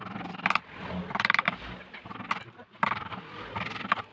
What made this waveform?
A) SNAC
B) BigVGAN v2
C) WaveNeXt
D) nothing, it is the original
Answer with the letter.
B